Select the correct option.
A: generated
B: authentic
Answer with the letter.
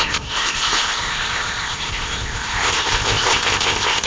A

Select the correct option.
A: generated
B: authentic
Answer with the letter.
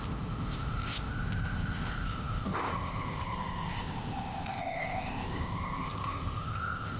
A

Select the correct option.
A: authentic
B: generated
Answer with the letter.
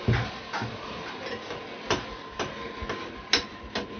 A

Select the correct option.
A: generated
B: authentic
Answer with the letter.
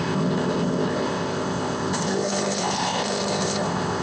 A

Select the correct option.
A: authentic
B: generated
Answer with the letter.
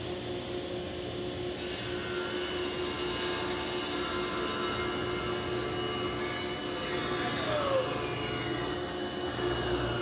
A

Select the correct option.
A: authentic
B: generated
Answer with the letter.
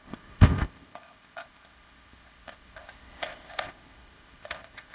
B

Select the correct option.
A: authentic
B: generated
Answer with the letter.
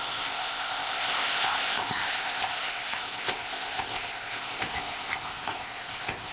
B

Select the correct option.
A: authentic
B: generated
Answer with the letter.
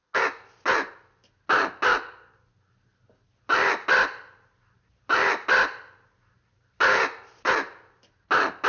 A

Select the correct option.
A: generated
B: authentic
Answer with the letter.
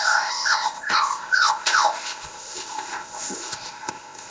A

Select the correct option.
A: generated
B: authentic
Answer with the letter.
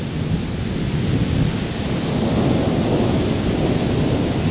B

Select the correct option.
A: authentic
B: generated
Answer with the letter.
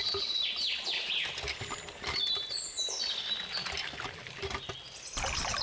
A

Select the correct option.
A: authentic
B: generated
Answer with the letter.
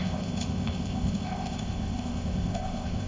B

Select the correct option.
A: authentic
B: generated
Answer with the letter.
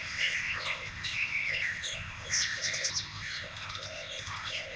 B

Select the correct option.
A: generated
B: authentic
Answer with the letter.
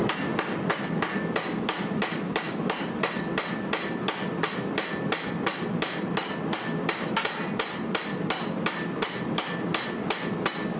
B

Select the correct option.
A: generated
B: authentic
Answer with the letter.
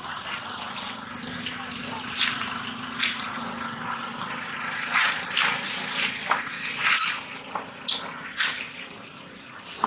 B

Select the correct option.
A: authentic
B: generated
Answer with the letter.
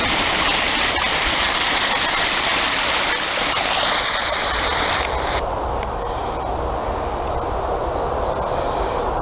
A